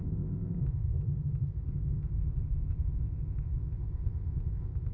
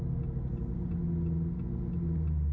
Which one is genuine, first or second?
second